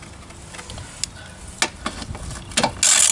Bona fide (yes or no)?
yes